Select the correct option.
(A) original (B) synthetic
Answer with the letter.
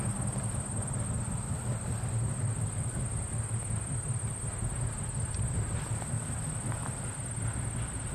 A